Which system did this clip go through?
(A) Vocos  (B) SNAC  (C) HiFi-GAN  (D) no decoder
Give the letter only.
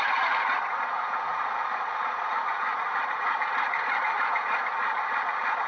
A